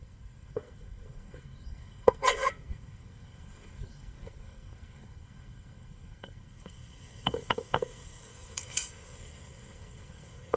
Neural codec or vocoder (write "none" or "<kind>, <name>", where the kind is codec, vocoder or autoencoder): codec, SNAC